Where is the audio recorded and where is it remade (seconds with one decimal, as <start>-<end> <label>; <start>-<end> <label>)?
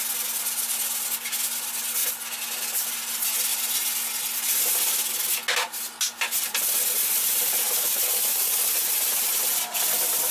0.0-7.0 recorded; 7.0-9.8 remade; 9.8-10.3 recorded